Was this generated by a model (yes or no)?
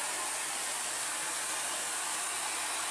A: no